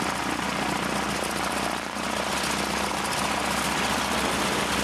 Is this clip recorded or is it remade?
recorded